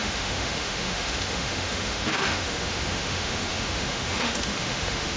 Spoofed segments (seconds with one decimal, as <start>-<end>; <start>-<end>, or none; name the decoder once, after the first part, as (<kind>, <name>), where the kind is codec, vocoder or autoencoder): 0.0-5.2 (autoencoder, DAC-VAE)